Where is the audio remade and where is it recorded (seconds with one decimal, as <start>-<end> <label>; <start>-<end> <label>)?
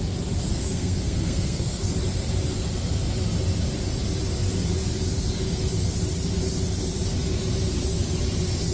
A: 0.0-0.5 recorded; 0.5-1.9 remade; 1.9-8.7 recorded